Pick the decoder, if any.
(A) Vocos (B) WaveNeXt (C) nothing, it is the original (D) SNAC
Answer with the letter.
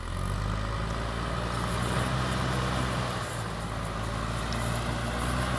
C